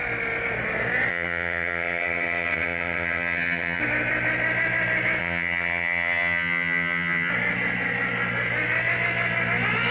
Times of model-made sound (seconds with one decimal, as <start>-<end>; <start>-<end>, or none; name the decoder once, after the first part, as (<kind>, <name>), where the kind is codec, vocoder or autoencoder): 1.1-3.8 (vocoder, HiFi-GAN); 5.2-7.3